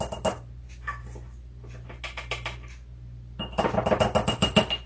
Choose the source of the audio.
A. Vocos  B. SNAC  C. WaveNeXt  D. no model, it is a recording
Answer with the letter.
D